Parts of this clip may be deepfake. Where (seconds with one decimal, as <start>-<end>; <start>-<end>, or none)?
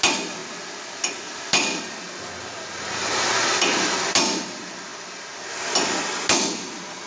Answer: none